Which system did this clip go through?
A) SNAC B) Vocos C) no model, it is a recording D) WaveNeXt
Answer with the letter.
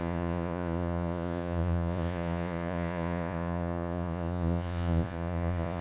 B